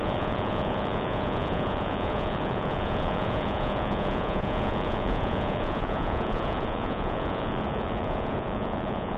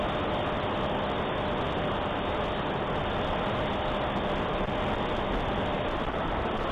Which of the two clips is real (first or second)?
second